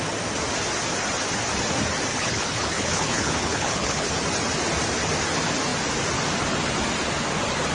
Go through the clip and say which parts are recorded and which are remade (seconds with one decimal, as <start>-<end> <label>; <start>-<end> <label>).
0.0-2.1 recorded; 2.1-4.1 remade; 4.1-7.7 recorded